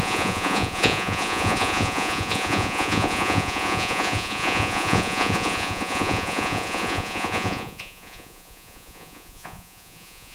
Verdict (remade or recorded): remade